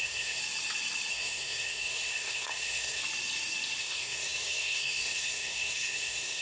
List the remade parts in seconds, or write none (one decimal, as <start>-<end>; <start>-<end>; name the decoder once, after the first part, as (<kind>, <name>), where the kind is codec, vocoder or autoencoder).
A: 0.0-0.4 (codec, SNAC); 1.1-3.0; 3.8-6.4